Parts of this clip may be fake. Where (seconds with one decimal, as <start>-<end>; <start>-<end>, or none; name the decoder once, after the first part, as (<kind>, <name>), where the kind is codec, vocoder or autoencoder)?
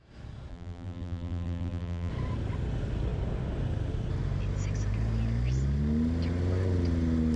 0.5-2.1 (vocoder, BigVGAN v2)